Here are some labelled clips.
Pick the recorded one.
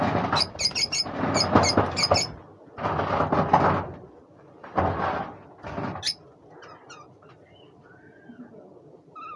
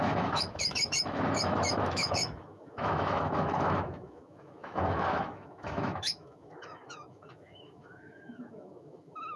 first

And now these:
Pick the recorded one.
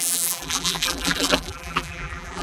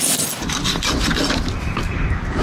second